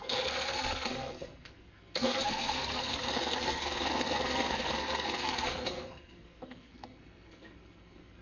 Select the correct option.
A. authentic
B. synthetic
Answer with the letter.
B